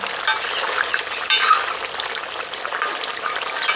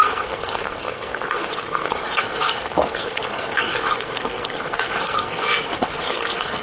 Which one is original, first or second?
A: first